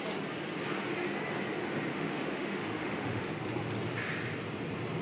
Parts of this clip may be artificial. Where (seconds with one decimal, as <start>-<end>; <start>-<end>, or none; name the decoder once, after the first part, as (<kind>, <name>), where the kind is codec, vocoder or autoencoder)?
1.9-3.3 (autoencoder, DAC-VAE)